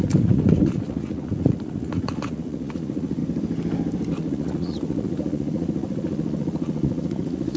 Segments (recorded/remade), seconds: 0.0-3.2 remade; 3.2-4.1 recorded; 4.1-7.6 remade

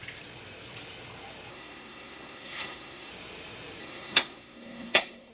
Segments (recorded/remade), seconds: 0.0-1.5 recorded; 1.5-3.1 remade; 3.1-3.8 recorded; 3.8-5.3 remade

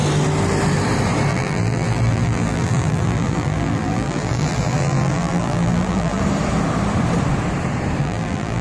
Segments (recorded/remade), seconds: 0.0-1.3 recorded; 1.3-6.2 remade; 6.2-8.0 recorded; 8.0-8.6 remade

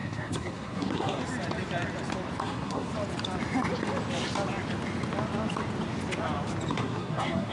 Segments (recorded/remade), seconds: 0.0-1.2 remade; 1.2-2.4 recorded; 2.4-2.9 remade; 2.9-6.7 recorded; 6.7-7.5 remade

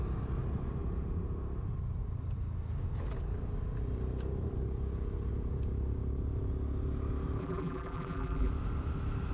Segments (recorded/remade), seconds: 0.0-7.4 recorded; 7.4-8.5 remade; 8.5-9.3 recorded

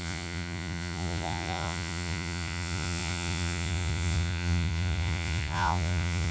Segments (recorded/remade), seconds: 0.0-6.3 remade

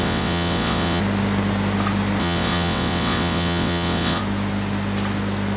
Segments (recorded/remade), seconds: 0.0-1.0 remade; 1.0-2.2 recorded; 2.2-4.2 remade; 4.2-5.6 recorded

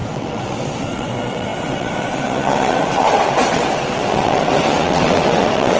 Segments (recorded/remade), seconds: 0.0-5.8 remade